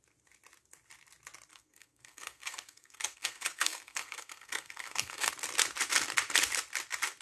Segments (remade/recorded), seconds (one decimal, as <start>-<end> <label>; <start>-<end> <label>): 0.0-1.5 recorded; 1.5-5.3 remade; 5.3-7.2 recorded